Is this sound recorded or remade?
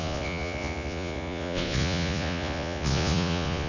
remade